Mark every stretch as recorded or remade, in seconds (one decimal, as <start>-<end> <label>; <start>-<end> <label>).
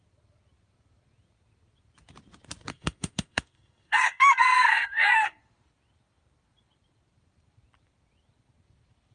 0.0-2.7 recorded; 2.7-5.4 remade; 5.4-9.1 recorded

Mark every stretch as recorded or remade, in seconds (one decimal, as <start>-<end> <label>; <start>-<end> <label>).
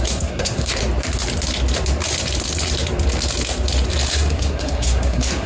0.0-0.8 remade; 0.8-4.1 recorded; 4.1-5.5 remade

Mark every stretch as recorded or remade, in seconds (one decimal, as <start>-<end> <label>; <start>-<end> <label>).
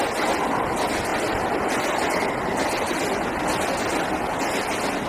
0.0-5.1 recorded